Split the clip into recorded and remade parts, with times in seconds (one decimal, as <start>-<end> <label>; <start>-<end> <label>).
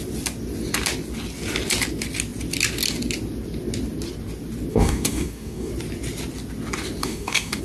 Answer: 0.0-4.7 recorded; 4.7-5.7 remade; 5.7-7.0 recorded; 7.0-7.6 remade